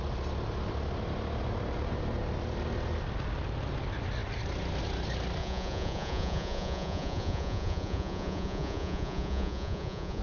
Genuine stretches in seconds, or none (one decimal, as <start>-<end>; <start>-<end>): 0.0-5.4